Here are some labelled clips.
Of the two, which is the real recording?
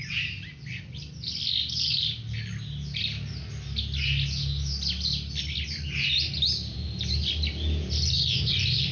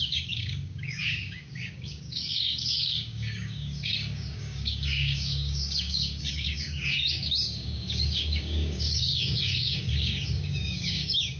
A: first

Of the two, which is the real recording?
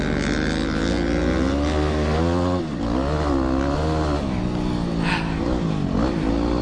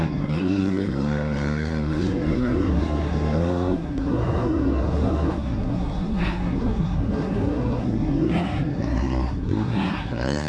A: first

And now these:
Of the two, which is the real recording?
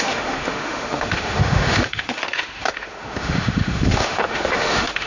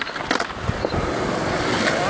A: second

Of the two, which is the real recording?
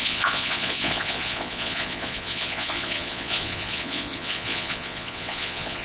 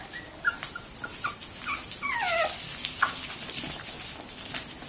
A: second